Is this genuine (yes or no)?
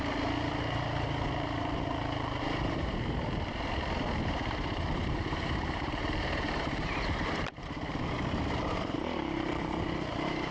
no